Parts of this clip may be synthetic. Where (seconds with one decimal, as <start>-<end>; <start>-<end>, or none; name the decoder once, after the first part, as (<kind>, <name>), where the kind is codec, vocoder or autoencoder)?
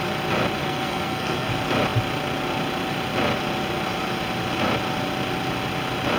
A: 0.6-1.5 (codec, SNAC)